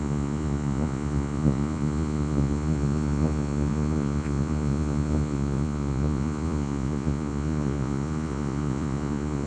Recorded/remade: remade